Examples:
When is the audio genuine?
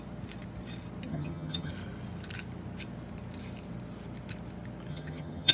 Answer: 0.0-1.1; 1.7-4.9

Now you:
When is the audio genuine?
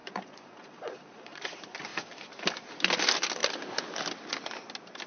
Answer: 1.4-5.1